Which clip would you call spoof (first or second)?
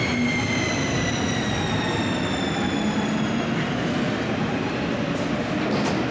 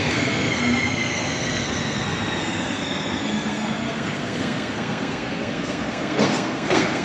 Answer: second